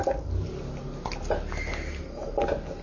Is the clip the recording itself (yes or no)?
yes